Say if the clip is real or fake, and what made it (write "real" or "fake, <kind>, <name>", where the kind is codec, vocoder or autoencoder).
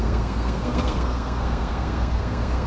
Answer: fake, codec, SNAC